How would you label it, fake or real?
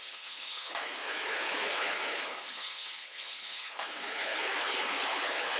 fake